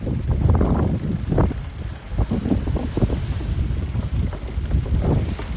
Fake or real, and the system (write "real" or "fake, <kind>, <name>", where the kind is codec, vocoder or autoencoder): real